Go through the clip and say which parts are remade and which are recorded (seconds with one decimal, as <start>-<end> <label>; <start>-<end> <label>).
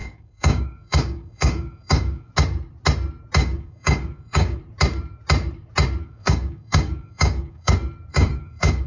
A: 0.0-2.3 remade; 2.3-3.4 recorded; 3.4-4.6 remade; 4.6-6.0 recorded; 6.0-7.7 remade; 7.7-8.1 recorded; 8.1-8.9 remade